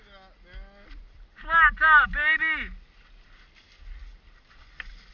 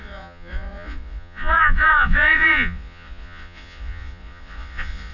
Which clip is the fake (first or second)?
second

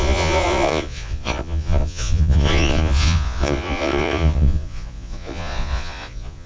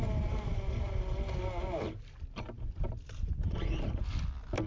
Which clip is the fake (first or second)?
first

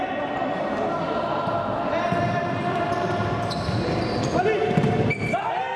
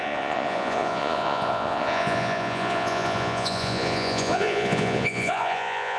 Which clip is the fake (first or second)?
second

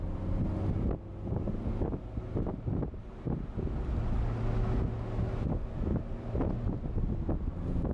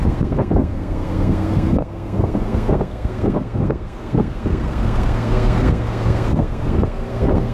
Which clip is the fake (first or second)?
second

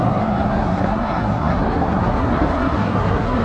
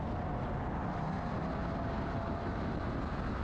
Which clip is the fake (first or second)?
first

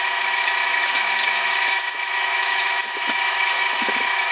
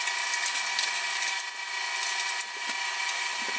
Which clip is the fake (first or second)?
first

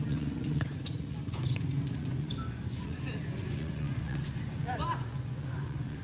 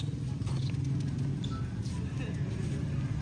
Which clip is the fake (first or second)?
first